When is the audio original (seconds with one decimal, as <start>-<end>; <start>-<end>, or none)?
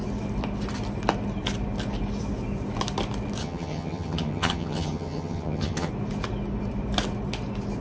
0.0-3.4; 5.9-7.8